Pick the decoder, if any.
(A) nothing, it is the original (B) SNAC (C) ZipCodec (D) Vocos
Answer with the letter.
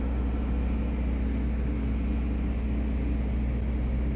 A